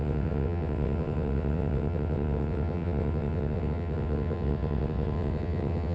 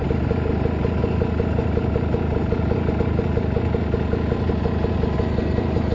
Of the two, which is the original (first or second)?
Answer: second